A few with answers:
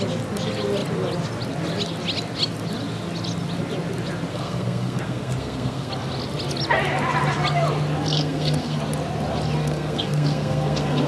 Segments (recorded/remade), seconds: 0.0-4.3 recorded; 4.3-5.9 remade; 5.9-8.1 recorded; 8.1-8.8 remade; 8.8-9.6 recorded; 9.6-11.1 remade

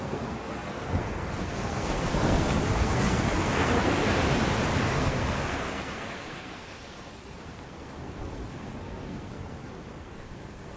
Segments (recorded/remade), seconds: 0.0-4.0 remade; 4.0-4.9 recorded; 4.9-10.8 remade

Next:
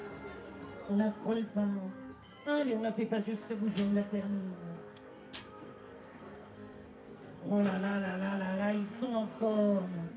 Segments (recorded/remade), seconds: 0.0-0.9 recorded; 0.9-10.2 remade

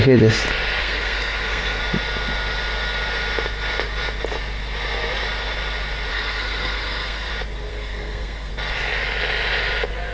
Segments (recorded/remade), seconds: 0.0-0.8 recorded; 0.8-1.8 remade; 1.8-6.1 recorded; 6.1-7.3 remade; 7.3-7.7 recorded; 7.7-8.5 remade; 8.5-10.1 recorded

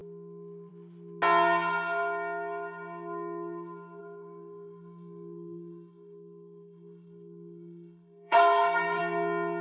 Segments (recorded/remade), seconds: 0.0-4.0 recorded; 4.0-9.0 remade; 9.0-9.6 recorded

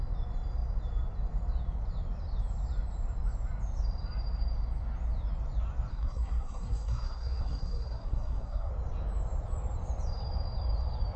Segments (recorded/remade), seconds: 0.0-5.9 recorded; 5.9-8.7 remade; 8.7-11.2 recorded

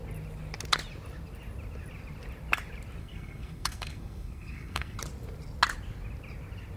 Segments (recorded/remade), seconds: 0.0-3.0 recorded; 3.0-5.0 remade; 5.0-6.8 recorded